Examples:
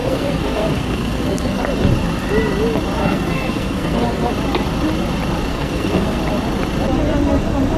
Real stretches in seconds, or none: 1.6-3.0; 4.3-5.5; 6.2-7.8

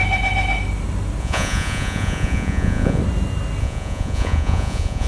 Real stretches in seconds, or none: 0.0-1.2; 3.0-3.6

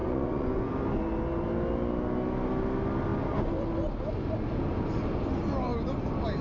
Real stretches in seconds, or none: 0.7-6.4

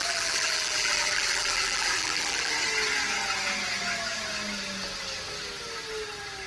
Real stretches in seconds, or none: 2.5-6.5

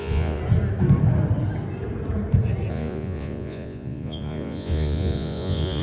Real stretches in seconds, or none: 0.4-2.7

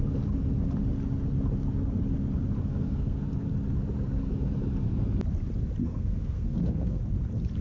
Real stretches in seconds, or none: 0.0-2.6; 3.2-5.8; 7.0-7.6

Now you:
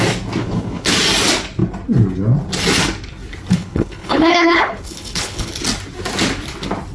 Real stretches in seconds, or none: 0.0-0.4; 0.9-3.5; 5.5-6.9

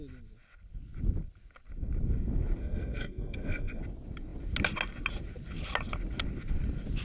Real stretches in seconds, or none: 0.0-2.6; 3.8-7.0